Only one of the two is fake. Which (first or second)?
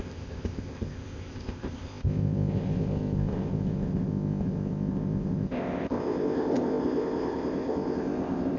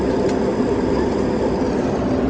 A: first